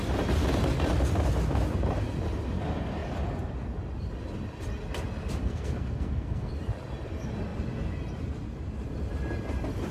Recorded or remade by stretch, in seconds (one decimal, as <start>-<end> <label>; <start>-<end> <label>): 0.0-5.4 recorded; 5.4-6.5 remade; 6.5-9.9 recorded